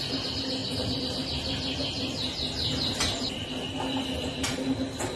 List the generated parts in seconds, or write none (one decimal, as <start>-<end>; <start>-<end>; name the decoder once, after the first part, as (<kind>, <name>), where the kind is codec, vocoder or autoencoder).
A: none